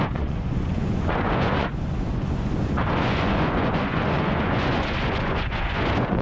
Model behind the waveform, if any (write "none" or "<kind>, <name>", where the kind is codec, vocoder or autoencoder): vocoder, Vocos